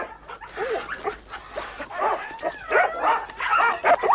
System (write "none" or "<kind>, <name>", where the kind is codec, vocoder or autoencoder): none